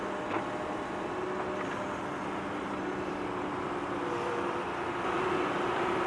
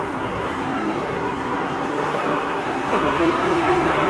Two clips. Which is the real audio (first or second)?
first